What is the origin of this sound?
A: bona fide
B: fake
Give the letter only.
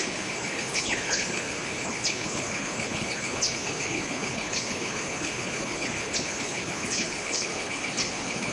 B